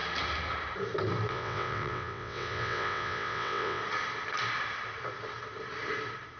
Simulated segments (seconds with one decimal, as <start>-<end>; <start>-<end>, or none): 1.3-3.8